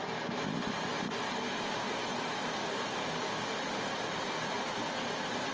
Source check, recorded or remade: recorded